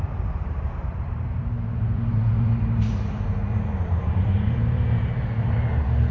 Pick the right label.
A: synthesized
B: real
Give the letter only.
A